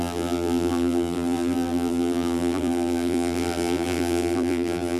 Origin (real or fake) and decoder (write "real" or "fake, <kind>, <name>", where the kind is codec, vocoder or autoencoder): fake, vocoder, BigVGAN v2